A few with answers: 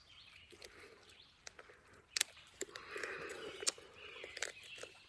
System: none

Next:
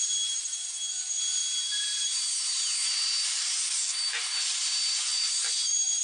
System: vocoder, BigVGAN v2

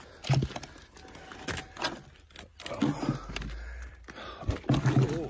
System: none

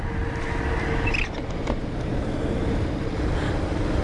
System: none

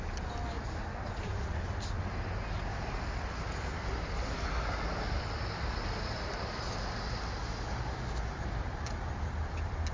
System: none